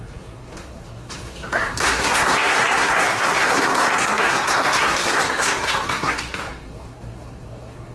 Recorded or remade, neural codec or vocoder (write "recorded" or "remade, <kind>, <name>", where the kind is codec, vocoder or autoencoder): remade, codec, SNAC